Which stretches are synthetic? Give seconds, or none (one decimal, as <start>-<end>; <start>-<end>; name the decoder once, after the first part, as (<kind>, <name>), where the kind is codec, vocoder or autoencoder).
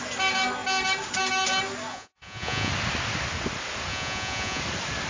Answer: 1.9-2.7 (vocoder, Vocos); 3.9-4.6